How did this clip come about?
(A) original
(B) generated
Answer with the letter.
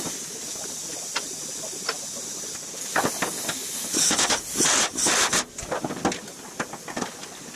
A